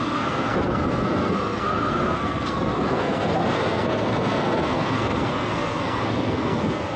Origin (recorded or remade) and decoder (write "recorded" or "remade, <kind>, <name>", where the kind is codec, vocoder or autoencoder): remade, codec, SNAC